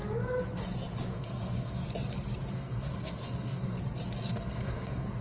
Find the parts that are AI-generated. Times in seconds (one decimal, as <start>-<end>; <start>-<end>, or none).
1.1-1.8; 2.5-3.8; 4.3-5.2